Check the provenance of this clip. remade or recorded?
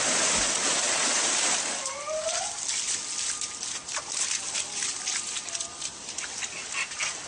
recorded